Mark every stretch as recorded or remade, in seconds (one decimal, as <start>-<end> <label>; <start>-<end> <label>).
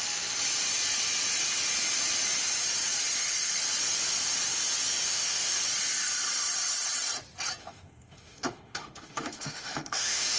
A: 0.0-5.0 recorded; 5.0-5.6 remade; 5.6-7.6 recorded; 7.6-10.4 remade